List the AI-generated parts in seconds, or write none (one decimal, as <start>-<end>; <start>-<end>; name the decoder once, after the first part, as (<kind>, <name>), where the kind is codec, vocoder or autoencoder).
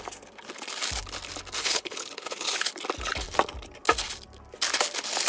1.6-2.7 (codec, HILCodec)